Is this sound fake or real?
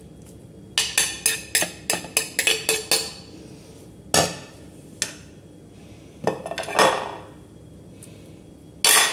real